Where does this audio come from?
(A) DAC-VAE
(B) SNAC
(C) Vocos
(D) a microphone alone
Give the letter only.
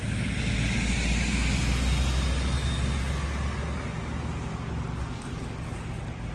D